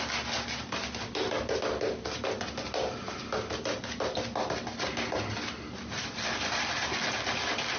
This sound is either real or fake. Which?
real